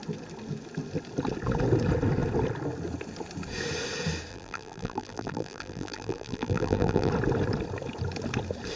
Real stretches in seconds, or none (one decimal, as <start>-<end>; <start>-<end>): 0.0-4.3; 7.1-8.8

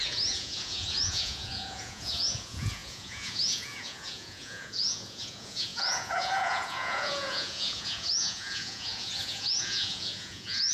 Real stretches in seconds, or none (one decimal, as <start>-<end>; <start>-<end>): none

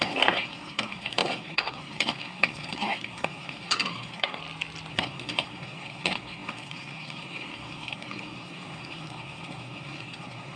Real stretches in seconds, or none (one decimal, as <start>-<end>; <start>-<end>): 4.4-4.9

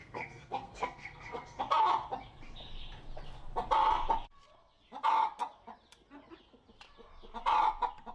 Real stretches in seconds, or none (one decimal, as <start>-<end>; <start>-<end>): 1.6-8.1

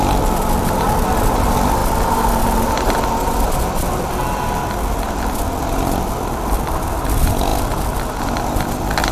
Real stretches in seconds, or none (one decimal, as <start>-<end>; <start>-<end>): 0.0-9.1